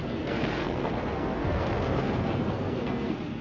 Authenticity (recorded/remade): remade